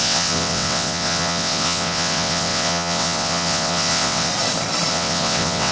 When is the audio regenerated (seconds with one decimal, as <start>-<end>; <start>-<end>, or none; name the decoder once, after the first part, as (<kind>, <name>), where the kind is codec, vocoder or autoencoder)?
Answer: 0.0-4.3 (vocoder, WaveNeXt); 4.9-5.7